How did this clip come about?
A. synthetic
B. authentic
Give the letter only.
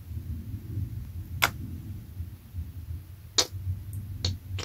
B